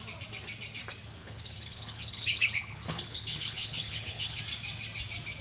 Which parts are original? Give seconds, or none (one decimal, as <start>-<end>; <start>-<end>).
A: 0.0-1.2; 4.4-5.4